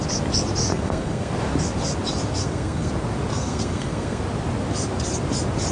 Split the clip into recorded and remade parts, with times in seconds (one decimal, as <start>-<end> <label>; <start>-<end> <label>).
0.0-0.7 recorded; 0.7-1.3 remade; 1.3-2.4 recorded; 2.4-2.9 remade; 2.9-3.3 recorded; 3.3-4.2 remade; 4.2-5.7 recorded